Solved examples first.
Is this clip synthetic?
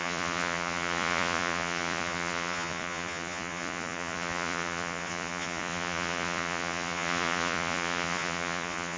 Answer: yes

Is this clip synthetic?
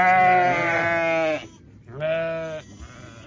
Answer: no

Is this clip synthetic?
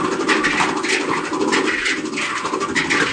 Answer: no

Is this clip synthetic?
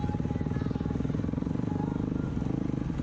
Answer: no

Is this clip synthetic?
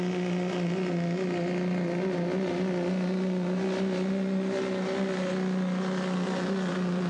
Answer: no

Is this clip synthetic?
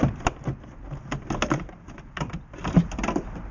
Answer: no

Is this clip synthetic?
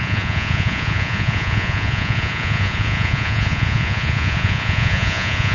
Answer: yes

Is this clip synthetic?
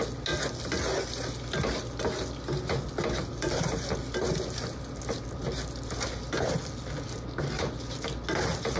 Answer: no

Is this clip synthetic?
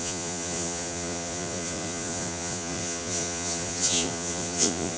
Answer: yes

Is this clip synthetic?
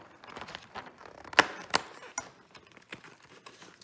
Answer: no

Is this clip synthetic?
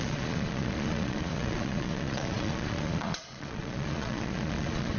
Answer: yes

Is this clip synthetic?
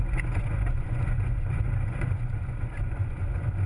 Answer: yes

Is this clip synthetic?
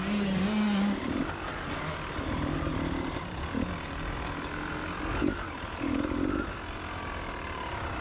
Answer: no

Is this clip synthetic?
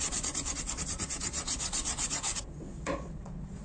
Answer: yes